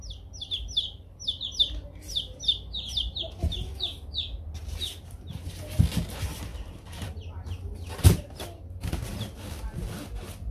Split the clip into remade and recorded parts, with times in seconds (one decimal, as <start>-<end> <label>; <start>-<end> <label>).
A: 0.0-10.5 recorded